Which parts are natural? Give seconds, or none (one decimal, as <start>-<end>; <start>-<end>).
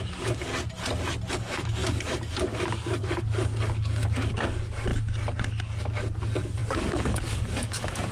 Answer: 0.5-1.3; 4.9-5.8